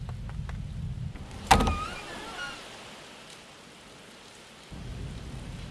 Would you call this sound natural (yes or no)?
yes